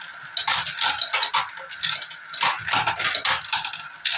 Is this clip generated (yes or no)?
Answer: no